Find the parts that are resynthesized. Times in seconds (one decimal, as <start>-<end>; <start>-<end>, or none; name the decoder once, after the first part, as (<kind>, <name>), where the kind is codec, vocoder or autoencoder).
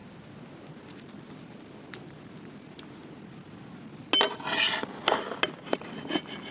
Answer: none